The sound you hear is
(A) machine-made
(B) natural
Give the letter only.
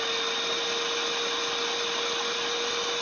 B